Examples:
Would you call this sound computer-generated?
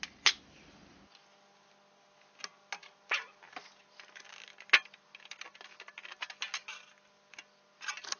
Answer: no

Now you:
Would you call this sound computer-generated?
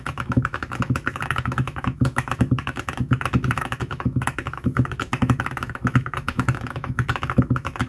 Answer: yes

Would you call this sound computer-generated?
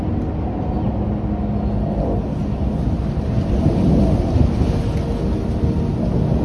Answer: no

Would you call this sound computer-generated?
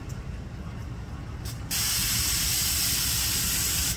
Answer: no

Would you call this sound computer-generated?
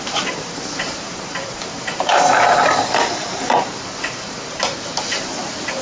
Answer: yes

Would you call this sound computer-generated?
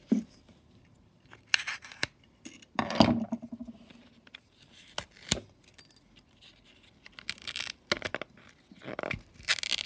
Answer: no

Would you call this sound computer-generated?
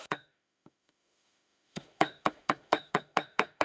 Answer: yes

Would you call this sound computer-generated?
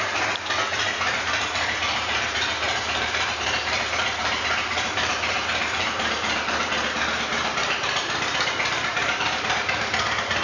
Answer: yes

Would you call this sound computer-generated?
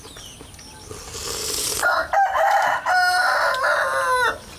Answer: no